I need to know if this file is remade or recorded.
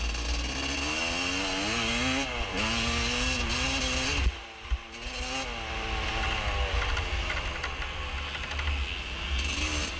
recorded